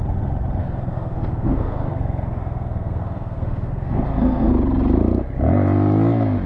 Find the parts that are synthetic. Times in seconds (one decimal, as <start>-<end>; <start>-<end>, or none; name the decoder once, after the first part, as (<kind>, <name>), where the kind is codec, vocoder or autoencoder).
0.6-4.5 (codec, SNAC)